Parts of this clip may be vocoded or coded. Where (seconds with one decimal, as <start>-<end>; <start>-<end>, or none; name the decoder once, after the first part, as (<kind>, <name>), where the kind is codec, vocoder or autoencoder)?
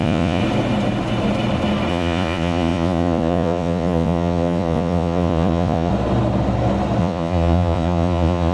0.0-0.4 (vocoder, Vocos); 1.9-5.9; 7.0-8.5